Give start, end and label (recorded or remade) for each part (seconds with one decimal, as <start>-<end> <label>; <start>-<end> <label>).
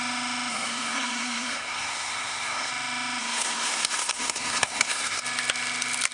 0.0-0.5 recorded; 0.5-2.7 remade; 2.7-3.2 recorded; 3.2-5.2 remade; 5.2-6.1 recorded